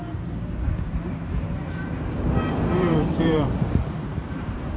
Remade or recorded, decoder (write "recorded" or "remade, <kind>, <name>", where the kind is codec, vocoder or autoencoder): remade, vocoder, BigVGAN v2